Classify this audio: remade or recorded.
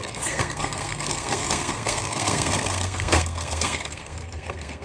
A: remade